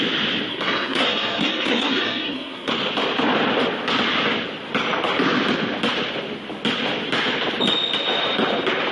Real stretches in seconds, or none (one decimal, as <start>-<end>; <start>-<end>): 0.0-0.5; 2.7-8.9